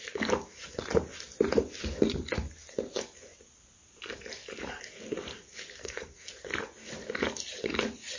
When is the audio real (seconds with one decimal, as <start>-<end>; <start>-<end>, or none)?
0.0-5.8; 6.3-8.2